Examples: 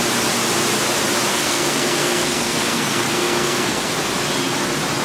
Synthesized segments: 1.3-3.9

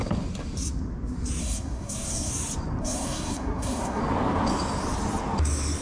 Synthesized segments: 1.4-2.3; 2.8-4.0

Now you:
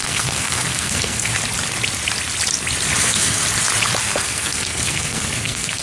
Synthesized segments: 0.0-1.3; 3.0-3.4; 4.0-5.8

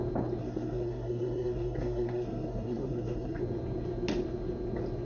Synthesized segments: 0.4-3.4

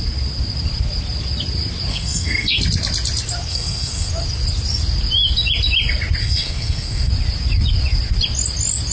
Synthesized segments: 1.9-2.6; 3.5-4.1; 6.2-7.1